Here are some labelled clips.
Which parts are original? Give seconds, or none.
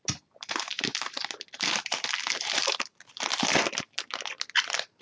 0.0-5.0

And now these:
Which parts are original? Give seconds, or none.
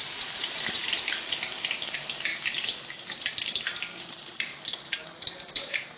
2.3-3.1; 4.5-5.3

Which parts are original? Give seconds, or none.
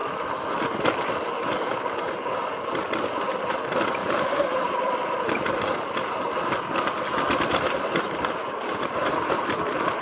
1.1-4.0; 8.8-10.0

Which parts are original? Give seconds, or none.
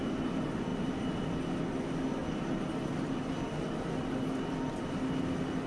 0.0-5.7